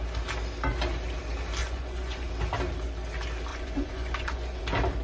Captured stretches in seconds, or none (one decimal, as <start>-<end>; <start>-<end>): 0.0-1.6; 2.3-3.5; 4.6-5.0